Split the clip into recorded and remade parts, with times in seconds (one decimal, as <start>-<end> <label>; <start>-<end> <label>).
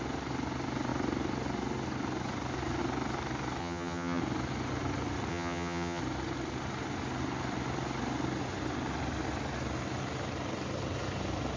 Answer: 0.0-3.6 recorded; 3.6-4.2 remade; 4.2-5.3 recorded; 5.3-6.0 remade; 6.0-11.6 recorded